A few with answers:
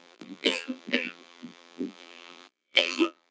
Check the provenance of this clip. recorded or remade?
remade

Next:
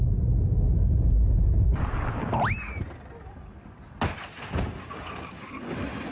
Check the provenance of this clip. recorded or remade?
recorded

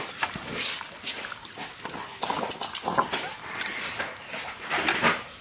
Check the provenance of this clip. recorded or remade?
recorded